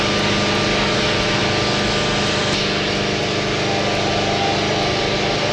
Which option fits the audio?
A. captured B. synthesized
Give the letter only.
A